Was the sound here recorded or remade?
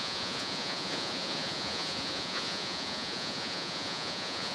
remade